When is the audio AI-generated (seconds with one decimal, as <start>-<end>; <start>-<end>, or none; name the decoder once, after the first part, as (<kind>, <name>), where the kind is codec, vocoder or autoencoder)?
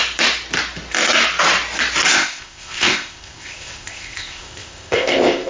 2.1-5.5 (codec, ZipCodec)